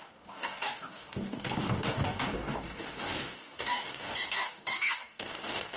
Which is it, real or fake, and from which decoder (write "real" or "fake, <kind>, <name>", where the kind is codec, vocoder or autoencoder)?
fake, codec, DAC